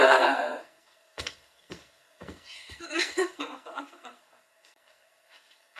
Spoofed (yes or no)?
yes